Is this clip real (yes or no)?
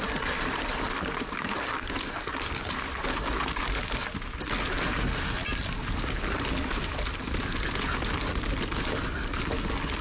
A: yes